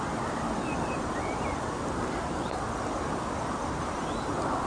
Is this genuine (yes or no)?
yes